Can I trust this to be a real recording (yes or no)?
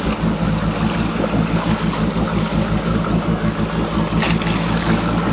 yes